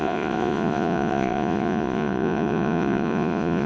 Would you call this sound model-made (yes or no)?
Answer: yes